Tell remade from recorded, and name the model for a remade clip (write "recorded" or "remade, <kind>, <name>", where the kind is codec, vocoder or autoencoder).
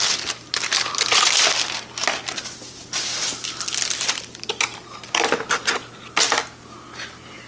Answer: recorded